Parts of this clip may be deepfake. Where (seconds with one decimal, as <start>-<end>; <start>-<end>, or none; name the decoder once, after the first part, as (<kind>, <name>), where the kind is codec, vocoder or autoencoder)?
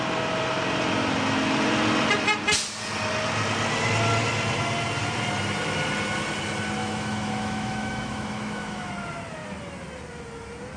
6.8-8.9 (autoencoder, DAC-VAE)